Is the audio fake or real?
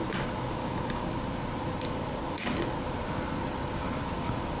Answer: real